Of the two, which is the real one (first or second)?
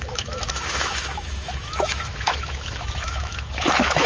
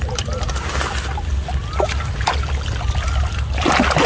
second